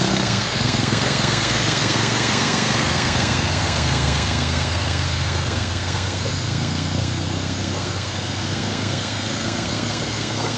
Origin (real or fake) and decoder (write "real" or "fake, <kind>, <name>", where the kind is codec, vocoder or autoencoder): fake, codec, SNAC